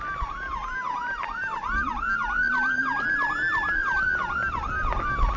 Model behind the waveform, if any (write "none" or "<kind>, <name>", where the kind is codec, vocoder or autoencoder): none